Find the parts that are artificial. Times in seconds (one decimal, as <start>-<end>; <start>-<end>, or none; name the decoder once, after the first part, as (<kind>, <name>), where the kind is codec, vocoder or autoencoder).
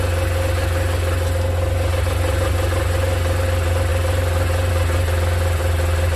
none